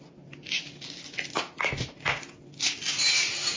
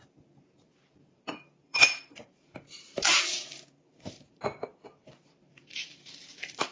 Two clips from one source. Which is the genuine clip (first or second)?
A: first